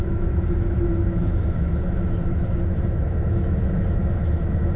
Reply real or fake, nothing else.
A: fake